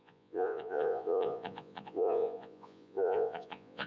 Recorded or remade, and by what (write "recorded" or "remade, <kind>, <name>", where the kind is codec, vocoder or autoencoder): remade, vocoder, Vocos